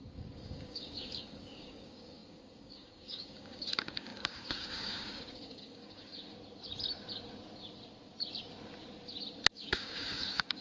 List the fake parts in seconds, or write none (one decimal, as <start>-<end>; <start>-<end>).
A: 0.0-6.1; 9.5-10.6